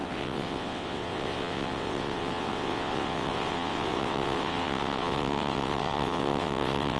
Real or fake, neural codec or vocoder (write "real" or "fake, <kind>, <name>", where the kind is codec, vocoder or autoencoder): fake, vocoder, WaveNeXt